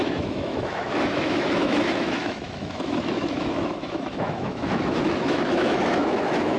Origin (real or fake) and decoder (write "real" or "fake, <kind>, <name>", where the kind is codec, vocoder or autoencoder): fake, autoencoder, DAC-VAE